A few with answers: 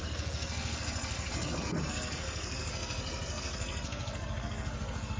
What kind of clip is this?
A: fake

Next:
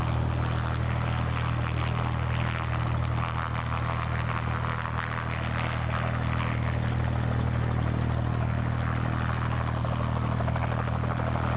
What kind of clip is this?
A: real